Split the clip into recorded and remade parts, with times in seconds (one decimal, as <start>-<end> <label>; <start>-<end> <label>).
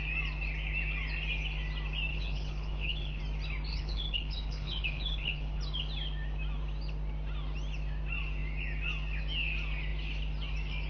0.0-2.1 recorded; 2.1-3.2 remade; 3.2-3.7 recorded; 3.7-5.6 remade; 5.6-10.9 recorded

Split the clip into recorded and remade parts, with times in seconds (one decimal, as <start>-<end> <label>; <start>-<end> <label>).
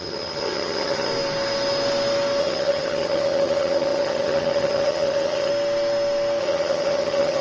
0.0-1.1 remade; 1.1-2.4 recorded; 2.4-5.5 remade; 5.5-6.4 recorded; 6.4-7.4 remade